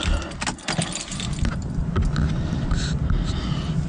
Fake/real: real